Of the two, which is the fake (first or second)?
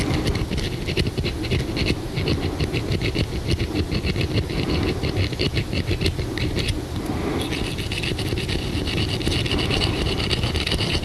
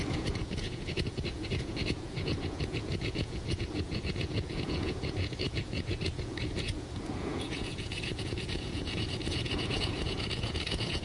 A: second